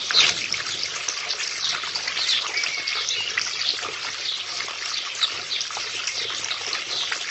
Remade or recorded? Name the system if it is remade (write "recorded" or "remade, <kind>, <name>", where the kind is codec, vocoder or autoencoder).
recorded